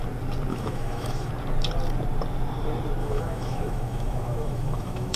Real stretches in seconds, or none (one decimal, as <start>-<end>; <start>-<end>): 0.0-0.5; 1.3-3.0